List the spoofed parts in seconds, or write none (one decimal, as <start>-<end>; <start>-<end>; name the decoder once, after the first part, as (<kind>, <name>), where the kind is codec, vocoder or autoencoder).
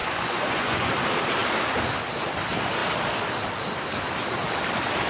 0.0-0.9 (vocoder, Vocos)